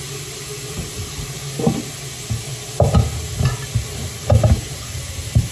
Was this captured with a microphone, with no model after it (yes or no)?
yes